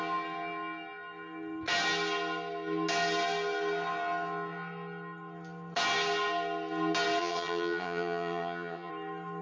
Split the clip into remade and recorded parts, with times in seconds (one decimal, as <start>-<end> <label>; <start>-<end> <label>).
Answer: 0.0-7.2 recorded; 7.2-8.9 remade; 8.9-9.4 recorded